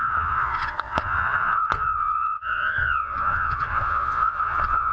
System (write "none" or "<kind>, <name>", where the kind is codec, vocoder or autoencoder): vocoder, Vocos